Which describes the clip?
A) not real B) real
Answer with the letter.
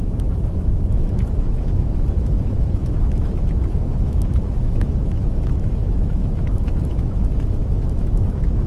A